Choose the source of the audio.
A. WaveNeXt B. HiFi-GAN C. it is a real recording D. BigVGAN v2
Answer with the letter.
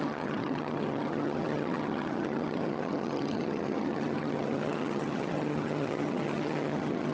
B